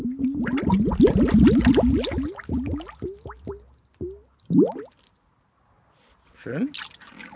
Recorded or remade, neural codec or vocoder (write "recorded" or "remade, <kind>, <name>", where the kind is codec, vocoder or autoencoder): recorded